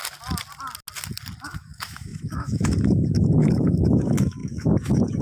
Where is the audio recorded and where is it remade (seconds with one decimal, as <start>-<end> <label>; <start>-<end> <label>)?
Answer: 0.0-1.4 recorded; 1.4-5.2 remade